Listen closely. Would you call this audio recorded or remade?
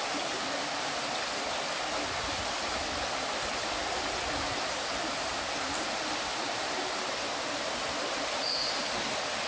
recorded